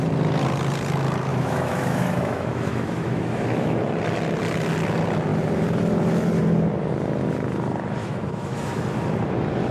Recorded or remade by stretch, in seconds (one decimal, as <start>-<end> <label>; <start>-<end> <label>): 0.0-1.3 recorded; 1.3-3.8 remade; 3.8-8.0 recorded; 8.0-8.7 remade; 8.7-9.7 recorded